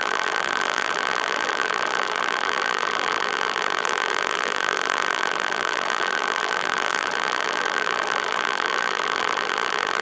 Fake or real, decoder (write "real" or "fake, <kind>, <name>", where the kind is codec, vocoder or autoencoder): fake, vocoder, BigVGAN v2